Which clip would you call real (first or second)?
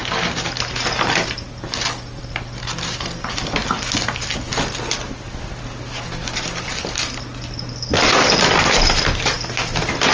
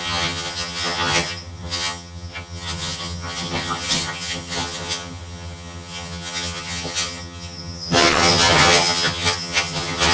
first